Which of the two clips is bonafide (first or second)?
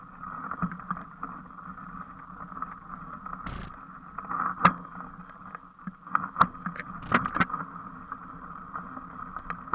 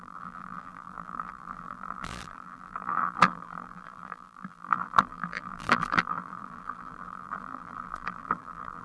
first